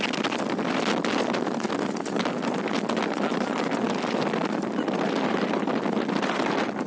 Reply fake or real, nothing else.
real